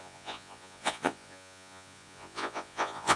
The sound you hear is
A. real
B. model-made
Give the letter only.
B